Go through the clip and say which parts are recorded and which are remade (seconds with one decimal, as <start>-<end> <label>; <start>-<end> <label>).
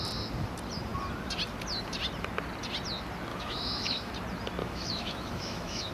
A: 0.0-3.3 recorded; 3.3-4.1 remade; 4.1-4.6 recorded; 4.6-5.9 remade